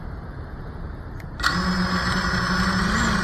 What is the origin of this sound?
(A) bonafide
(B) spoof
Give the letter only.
A